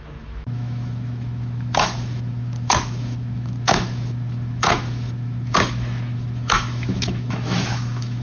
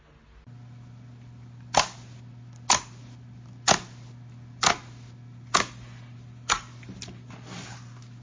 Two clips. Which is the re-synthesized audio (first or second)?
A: first